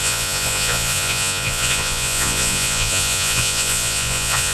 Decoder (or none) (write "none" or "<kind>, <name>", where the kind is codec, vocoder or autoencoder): vocoder, Vocos